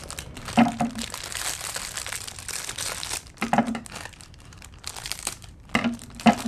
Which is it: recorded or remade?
remade